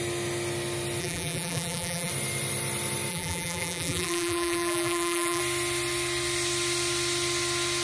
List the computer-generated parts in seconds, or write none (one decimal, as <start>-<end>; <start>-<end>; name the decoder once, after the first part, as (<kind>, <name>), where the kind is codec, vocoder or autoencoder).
1.0-2.1 (vocoder, BigVGAN v2); 3.1-5.4